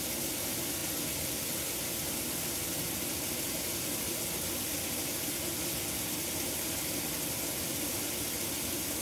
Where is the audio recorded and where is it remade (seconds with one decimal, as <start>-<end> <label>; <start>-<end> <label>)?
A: 0.0-9.0 recorded